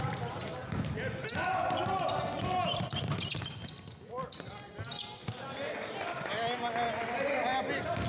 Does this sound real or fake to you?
real